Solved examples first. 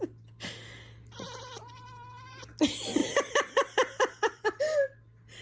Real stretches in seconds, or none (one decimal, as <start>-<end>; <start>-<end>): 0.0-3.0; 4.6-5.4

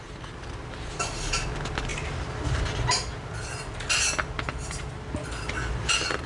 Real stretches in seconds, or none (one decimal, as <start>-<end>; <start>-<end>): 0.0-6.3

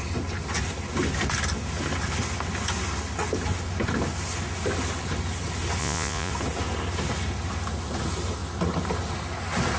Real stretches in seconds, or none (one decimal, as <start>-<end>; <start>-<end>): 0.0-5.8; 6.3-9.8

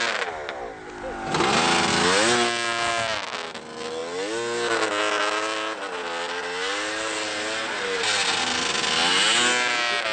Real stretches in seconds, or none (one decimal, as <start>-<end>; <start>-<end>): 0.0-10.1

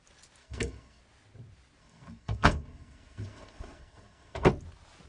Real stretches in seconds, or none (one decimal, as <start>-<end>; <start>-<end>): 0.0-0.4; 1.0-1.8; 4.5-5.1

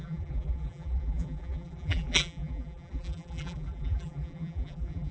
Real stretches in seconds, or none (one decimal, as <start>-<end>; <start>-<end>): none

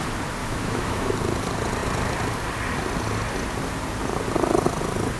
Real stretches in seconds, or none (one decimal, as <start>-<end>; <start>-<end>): 0.0-0.4; 1.1-5.2

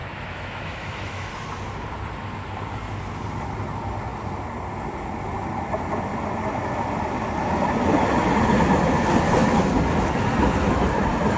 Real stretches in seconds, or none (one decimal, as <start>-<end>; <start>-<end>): 1.3-11.4